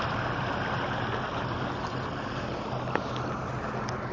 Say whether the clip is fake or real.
real